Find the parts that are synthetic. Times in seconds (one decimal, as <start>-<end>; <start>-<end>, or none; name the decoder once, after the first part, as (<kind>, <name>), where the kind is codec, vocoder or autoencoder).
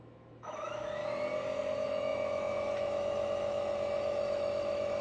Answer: 0.0-1.0 (autoencoder, DAC-VAE); 1.6-5.0